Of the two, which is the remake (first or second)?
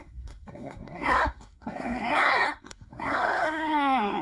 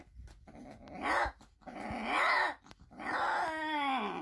first